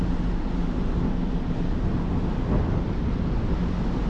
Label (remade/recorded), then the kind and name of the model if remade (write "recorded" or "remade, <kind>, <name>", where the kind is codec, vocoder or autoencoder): recorded